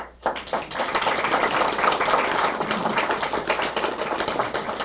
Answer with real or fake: real